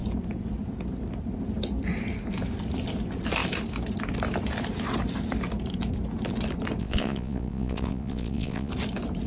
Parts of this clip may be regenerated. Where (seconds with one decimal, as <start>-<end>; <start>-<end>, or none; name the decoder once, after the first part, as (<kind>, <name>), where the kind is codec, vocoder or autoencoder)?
6.8-8.7 (vocoder, Vocos)